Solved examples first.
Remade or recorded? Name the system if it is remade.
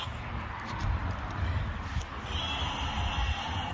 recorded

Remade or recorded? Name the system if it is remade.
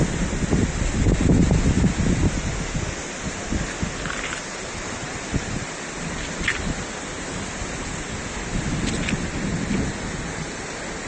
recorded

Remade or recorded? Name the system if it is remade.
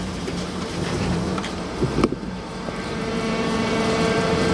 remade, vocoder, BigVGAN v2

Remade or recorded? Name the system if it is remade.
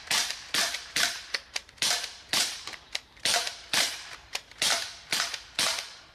remade, vocoder, BigVGAN v2